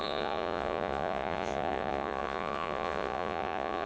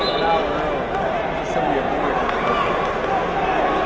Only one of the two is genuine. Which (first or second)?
second